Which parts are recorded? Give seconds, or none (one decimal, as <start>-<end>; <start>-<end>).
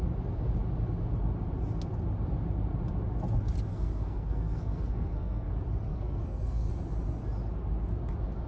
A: 0.0-3.7; 5.5-5.9; 6.7-8.5